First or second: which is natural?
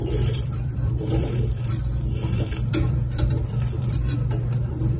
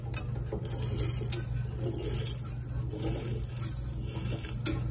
second